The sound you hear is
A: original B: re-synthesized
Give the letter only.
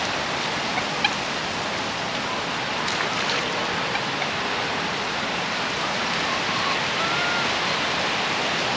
A